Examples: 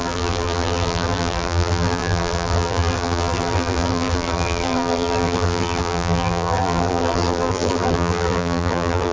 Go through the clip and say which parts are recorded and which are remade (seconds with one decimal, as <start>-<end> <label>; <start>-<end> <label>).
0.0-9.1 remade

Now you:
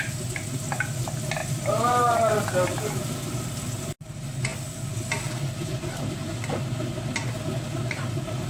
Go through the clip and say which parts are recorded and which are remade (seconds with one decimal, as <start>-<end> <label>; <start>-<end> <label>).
0.0-8.5 recorded

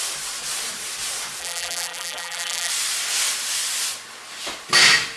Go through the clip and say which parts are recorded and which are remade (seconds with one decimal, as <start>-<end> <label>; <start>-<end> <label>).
0.0-1.4 recorded; 1.4-2.7 remade; 2.7-5.2 recorded